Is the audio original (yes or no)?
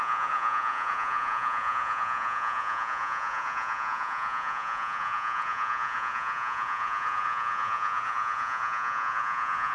no